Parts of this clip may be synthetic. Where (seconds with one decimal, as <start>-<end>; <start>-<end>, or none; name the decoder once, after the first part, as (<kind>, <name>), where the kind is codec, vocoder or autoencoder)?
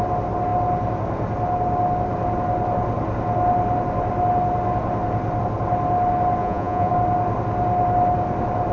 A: 6.4-6.9 (vocoder, Vocos)